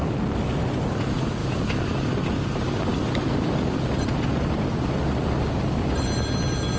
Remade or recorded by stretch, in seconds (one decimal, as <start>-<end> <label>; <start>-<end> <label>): 0.0-6.8 recorded